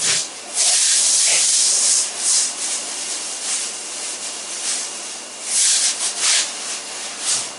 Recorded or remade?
remade